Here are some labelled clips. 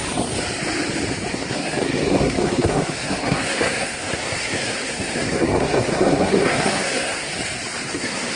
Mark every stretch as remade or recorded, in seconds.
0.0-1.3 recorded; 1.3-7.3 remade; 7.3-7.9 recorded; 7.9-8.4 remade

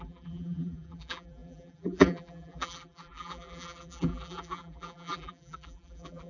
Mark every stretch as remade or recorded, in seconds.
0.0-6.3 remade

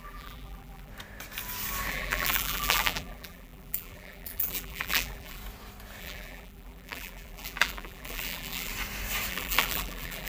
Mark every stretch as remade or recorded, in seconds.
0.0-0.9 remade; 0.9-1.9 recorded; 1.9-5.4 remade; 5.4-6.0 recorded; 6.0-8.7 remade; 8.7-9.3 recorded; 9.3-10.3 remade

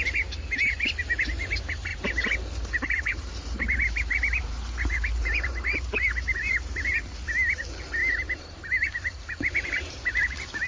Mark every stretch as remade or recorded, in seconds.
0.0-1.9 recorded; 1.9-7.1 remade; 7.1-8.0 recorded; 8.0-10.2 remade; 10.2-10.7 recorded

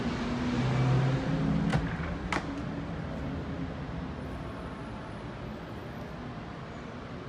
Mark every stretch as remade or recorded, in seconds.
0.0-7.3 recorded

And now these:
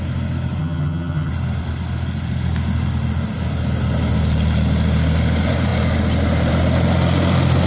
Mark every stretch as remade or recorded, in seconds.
0.0-0.6 recorded; 0.6-1.3 remade; 1.3-7.7 recorded